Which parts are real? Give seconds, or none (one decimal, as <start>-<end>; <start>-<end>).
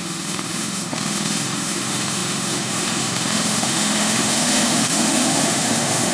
none